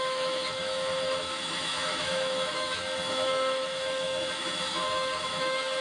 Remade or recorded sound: remade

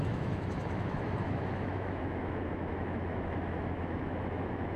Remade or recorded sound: remade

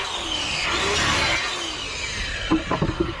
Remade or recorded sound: recorded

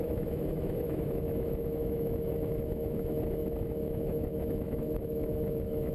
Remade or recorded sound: remade